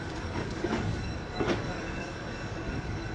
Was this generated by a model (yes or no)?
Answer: yes